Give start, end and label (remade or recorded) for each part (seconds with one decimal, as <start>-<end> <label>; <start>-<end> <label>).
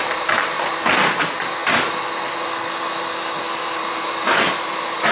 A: 0.0-1.6 remade; 1.6-3.6 recorded; 3.6-5.1 remade